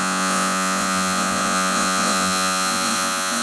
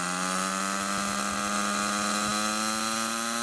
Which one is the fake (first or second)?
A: first